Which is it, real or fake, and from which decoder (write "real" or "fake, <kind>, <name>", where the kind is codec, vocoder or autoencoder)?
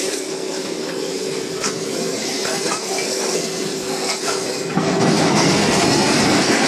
fake, codec, SNAC